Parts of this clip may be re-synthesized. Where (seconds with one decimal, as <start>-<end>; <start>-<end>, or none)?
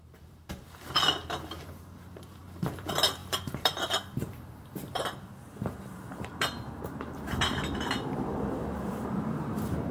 0.0-9.9